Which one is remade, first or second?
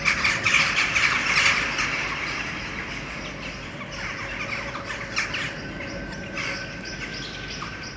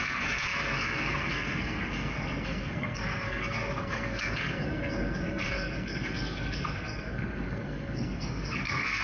second